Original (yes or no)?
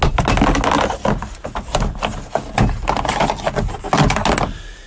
yes